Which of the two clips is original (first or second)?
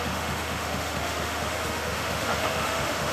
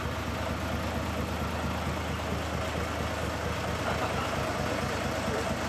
second